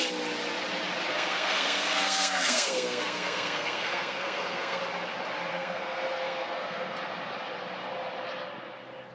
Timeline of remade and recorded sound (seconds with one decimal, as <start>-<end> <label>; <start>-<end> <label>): 0.0-1.1 recorded; 1.1-4.8 remade; 4.8-5.5 recorded; 5.5-6.9 remade; 6.9-9.1 recorded